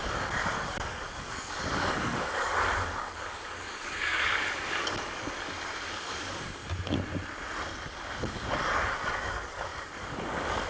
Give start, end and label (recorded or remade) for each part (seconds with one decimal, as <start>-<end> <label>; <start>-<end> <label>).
0.0-6.6 remade; 6.6-7.9 recorded; 7.9-10.7 remade